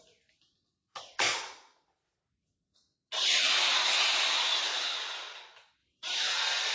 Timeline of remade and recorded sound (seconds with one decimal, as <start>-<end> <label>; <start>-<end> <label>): 0.0-5.8 recorded; 5.8-6.3 remade; 6.3-6.7 recorded